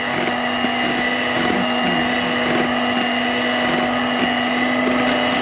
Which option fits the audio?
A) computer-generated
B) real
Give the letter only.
B